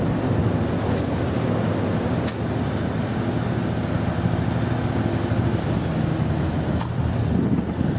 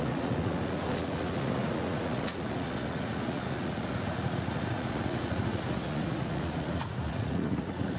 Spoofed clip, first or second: second